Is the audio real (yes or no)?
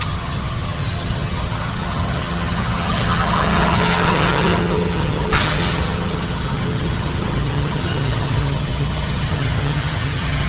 no